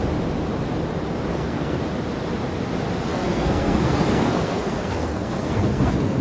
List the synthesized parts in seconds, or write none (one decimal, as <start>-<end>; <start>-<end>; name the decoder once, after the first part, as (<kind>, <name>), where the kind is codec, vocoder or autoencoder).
1.3-1.8 (codec, SNAC); 3.1-6.2